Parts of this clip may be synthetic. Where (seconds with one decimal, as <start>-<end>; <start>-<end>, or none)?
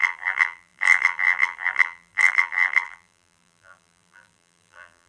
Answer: 0.0-5.1